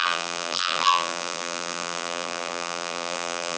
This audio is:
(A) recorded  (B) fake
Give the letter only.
B